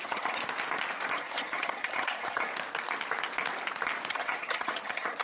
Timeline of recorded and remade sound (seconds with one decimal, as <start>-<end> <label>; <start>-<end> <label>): 0.0-0.4 remade; 0.4-1.1 recorded; 1.1-2.5 remade; 2.5-4.1 recorded; 4.1-5.2 remade